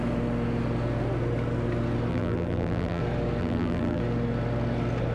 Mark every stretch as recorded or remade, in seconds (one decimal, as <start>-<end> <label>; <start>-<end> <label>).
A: 0.0-2.1 recorded; 2.1-3.0 remade; 3.0-3.4 recorded; 3.4-4.0 remade; 4.0-5.1 recorded